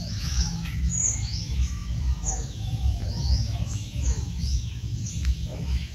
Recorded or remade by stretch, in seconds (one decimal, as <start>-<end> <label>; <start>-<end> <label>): 0.0-5.9 remade